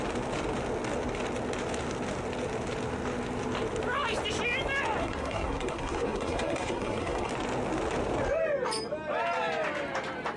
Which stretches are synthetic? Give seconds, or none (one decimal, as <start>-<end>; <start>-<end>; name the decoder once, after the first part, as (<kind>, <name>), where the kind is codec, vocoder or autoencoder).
5.0-7.3 (codec, SNAC)